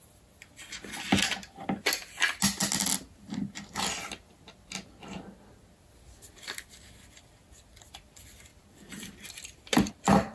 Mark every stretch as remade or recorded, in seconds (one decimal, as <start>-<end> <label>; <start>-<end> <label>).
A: 0.0-8.5 recorded; 8.5-9.9 remade; 9.9-10.3 recorded